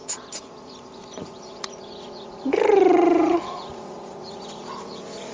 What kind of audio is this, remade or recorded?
remade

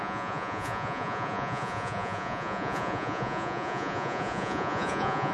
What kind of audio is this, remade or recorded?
remade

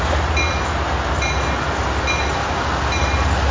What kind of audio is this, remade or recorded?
recorded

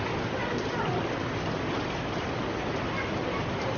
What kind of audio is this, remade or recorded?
recorded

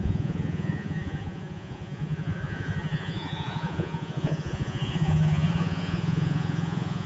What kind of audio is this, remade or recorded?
remade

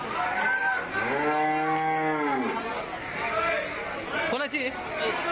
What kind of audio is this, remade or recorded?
recorded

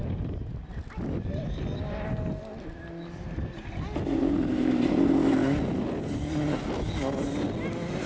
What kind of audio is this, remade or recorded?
recorded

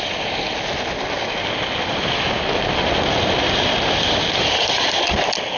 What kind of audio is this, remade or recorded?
recorded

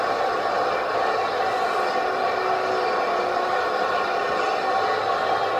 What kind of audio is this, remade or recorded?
recorded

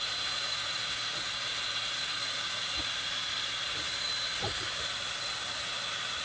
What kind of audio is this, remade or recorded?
recorded